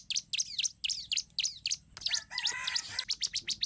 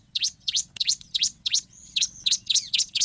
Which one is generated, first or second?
second